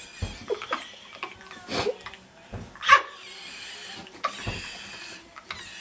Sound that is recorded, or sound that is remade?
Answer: recorded